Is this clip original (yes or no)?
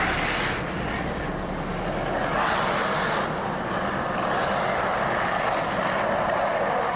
yes